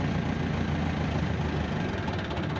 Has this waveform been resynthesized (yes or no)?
no